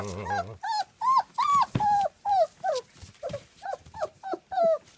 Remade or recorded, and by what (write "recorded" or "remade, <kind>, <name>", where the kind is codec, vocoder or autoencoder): recorded